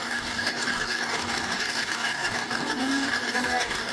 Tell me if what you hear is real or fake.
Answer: fake